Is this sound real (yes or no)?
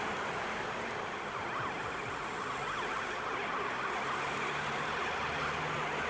yes